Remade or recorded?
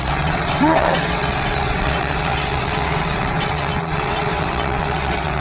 remade